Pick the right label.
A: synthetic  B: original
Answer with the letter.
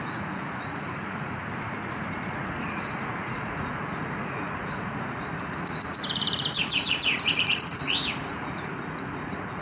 A